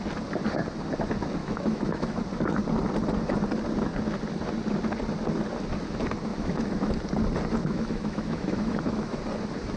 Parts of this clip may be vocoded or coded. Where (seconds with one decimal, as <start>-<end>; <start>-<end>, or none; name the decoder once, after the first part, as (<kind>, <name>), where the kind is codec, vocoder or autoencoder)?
1.4-2.2 (autoencoder, DAC-VAE); 6.3-6.9; 7.6-9.2